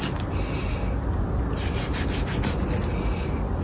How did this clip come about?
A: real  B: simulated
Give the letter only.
A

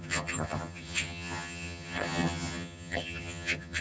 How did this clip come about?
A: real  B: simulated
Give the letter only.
B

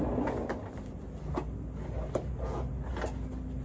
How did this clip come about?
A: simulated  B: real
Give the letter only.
B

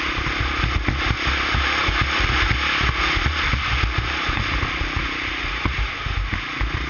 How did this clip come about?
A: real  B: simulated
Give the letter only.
A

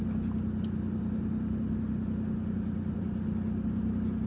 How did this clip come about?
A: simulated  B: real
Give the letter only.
B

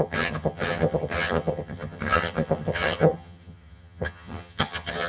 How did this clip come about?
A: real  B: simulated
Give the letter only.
B